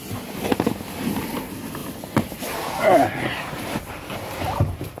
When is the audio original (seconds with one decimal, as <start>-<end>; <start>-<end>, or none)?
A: 0.0-5.0